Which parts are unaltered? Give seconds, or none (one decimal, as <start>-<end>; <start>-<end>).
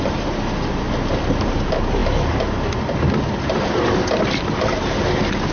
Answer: 0.0-5.5